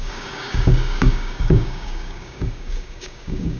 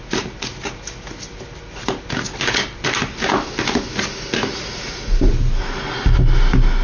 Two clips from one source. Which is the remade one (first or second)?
first